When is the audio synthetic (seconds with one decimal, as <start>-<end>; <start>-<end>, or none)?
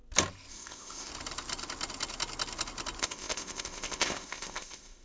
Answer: 0.5-1.1; 3.0-5.0